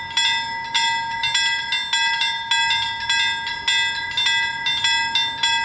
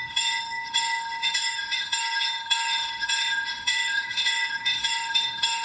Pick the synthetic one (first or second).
second